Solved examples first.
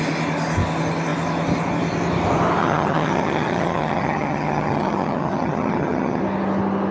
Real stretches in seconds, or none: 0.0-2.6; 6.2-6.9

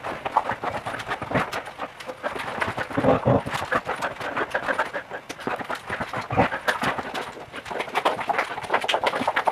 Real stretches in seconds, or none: 0.0-9.5

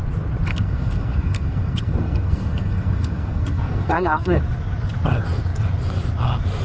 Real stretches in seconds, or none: 0.0-0.5; 4.4-6.6

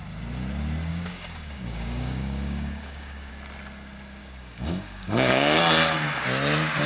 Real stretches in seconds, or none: 0.0-0.9; 3.3-4.2; 5.6-6.9

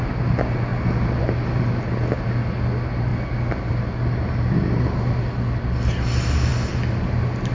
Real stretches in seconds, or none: 0.0-7.5

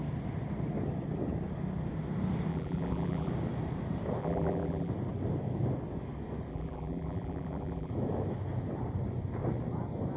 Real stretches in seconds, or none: 0.0-2.5; 3.3-4.2; 4.9-6.5; 7.9-10.2

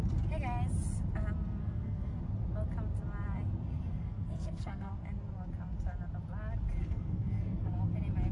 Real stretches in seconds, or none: 0.0-1.6; 2.2-3.9; 4.9-6.8; 7.7-8.3

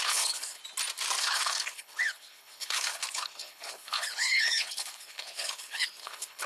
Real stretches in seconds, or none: 0.6-1.2